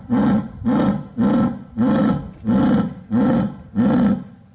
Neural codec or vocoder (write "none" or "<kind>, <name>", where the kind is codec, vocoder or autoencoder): none